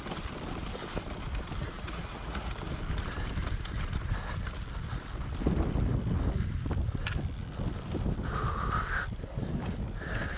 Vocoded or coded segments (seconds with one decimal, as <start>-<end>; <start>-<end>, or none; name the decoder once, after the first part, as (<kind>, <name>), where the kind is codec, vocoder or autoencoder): 1.6-2.5 (vocoder, Vocos)

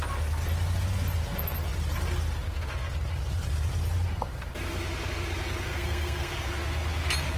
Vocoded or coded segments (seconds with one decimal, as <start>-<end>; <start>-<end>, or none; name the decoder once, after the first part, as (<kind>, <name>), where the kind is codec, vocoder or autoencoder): 5.7-6.3 (codec, SNAC)